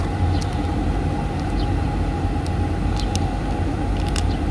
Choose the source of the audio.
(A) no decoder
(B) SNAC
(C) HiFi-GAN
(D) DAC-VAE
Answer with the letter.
A